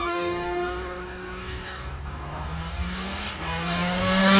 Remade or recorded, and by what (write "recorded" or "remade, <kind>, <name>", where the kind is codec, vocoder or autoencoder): remade, codec, DAC